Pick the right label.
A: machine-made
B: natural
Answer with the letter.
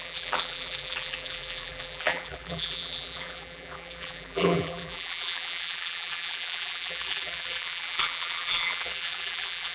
A